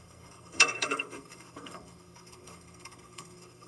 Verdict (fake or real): fake